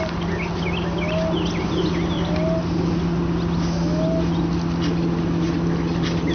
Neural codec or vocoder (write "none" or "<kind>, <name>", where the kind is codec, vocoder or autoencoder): none